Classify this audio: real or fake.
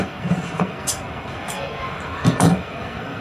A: fake